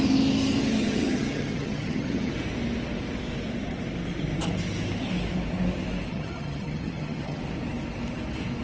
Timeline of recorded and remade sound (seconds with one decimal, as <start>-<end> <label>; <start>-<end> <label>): 0.0-0.8 recorded; 0.8-2.3 remade; 2.3-6.1 recorded; 6.1-7.4 remade; 7.4-8.6 recorded